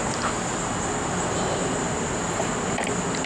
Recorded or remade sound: recorded